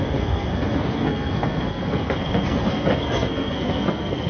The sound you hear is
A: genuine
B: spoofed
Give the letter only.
B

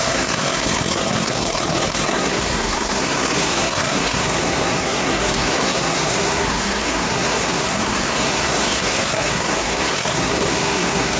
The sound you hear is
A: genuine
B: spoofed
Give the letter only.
B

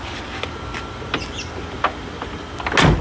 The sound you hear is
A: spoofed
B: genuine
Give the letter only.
B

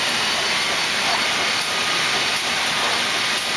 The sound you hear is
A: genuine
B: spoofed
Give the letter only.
A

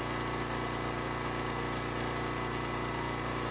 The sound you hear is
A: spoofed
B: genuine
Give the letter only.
B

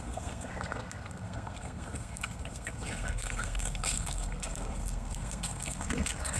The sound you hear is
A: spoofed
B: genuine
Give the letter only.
A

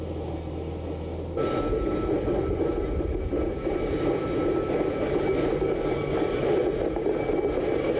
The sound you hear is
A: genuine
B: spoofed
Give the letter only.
A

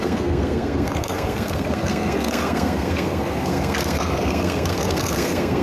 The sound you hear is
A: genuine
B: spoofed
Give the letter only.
B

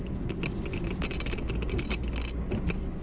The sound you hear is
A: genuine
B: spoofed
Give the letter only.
A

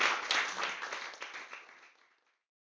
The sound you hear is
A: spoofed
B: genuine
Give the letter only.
B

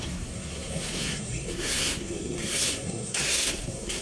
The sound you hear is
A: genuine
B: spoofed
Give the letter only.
B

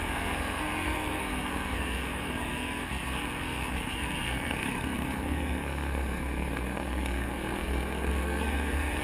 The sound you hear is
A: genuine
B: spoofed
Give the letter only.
B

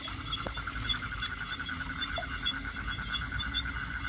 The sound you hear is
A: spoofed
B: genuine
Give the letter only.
B